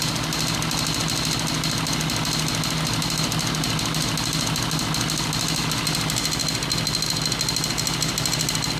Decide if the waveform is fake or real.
real